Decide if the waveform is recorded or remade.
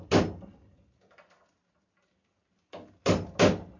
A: recorded